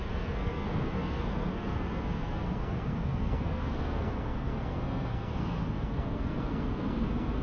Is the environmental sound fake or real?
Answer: fake